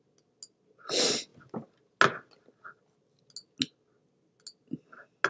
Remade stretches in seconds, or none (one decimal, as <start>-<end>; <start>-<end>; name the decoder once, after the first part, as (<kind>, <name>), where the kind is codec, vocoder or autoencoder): none